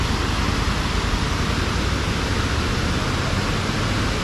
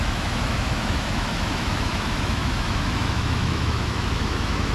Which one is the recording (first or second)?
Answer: first